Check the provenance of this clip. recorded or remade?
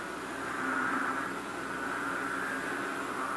recorded